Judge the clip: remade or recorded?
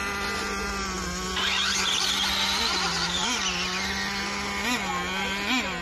recorded